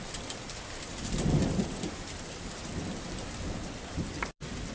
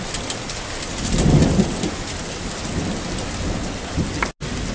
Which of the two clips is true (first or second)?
second